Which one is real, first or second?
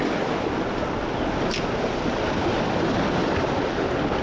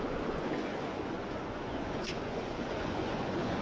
first